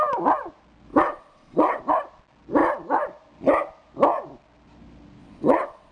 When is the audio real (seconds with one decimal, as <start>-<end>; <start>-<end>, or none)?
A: 0.0-0.9; 1.8-5.2